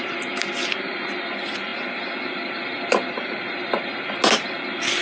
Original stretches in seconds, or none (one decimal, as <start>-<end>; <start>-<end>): 0.0-5.0